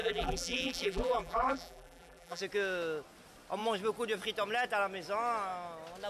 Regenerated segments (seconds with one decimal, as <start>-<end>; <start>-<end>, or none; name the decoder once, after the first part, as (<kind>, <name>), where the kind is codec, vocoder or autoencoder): 0.0-2.4 (vocoder, BigVGAN v2)